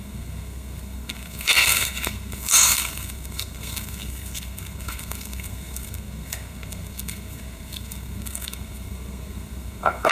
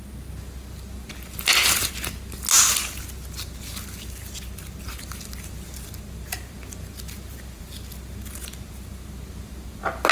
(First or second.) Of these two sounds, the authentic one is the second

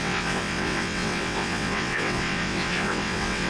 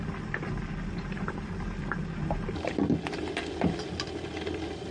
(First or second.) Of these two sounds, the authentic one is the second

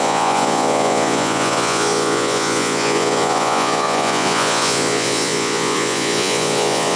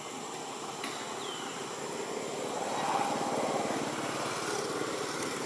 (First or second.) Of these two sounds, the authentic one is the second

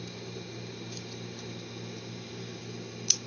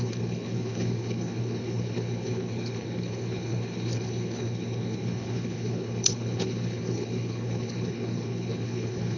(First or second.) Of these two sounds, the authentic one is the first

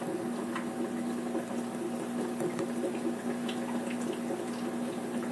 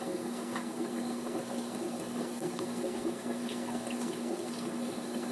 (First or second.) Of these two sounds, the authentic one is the first